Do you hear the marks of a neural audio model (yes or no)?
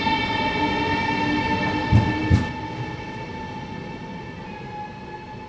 no